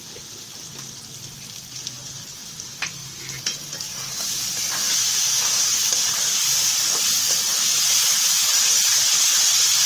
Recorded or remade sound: recorded